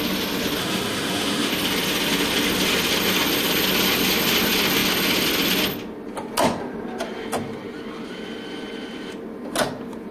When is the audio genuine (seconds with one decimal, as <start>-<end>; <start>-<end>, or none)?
0.0-0.6; 1.5-10.1